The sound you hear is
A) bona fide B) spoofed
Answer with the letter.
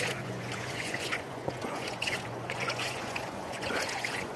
B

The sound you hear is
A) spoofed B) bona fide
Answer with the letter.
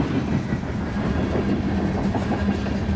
B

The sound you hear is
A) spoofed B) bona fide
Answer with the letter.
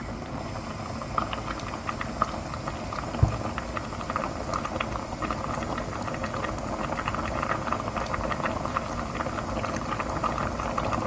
B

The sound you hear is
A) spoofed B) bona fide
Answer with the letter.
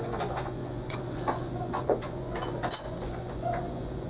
A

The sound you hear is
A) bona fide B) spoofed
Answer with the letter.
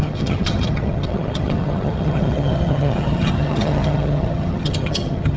B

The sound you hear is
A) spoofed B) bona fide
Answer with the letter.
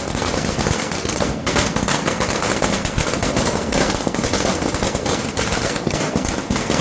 A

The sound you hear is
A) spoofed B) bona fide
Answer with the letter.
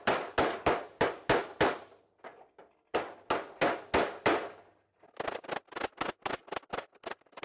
B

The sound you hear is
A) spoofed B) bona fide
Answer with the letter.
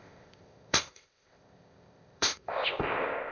A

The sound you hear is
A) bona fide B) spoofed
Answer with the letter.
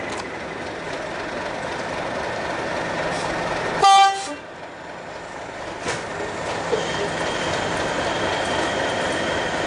A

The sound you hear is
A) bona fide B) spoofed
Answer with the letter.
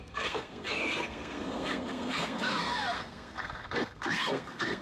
B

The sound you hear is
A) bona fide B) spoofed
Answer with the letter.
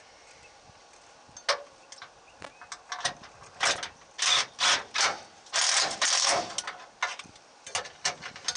A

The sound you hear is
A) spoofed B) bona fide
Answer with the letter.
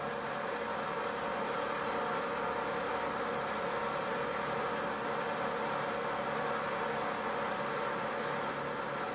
B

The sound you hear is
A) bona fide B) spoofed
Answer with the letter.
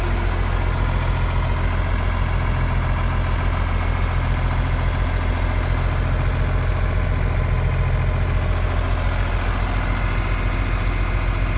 A